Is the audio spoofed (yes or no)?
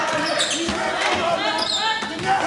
no